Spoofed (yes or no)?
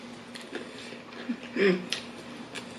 no